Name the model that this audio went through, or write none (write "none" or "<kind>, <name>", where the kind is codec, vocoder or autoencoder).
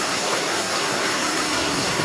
codec, SNAC